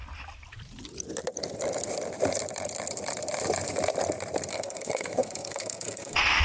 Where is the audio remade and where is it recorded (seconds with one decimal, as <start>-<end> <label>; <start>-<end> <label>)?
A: 0.0-4.5 recorded; 4.5-6.4 remade